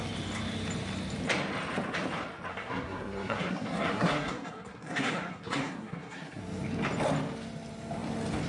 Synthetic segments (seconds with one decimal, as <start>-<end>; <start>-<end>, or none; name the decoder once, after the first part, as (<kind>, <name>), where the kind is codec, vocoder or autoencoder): 2.5-6.4 (codec, SNAC)